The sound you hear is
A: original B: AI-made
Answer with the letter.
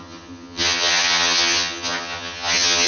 B